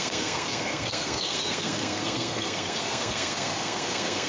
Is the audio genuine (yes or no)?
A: no